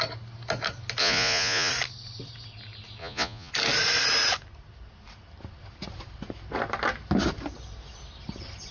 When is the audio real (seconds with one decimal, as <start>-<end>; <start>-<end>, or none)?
0.0-1.0; 1.7-3.0; 3.5-8.7